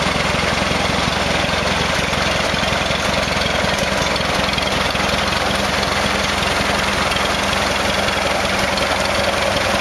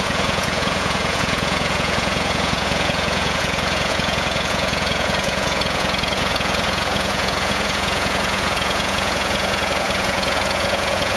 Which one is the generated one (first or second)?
second